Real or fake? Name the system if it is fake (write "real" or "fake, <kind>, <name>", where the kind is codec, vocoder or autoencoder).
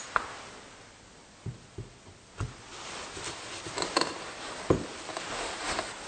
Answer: real